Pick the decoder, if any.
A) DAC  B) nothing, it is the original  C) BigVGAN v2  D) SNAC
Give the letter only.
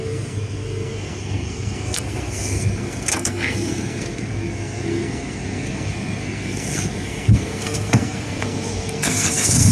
D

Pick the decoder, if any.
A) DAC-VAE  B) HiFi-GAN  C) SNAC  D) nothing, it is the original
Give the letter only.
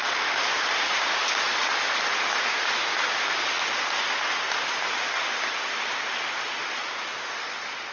D